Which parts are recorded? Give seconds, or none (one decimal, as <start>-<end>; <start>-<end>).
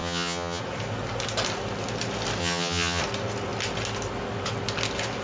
0.6-2.4; 3.0-5.2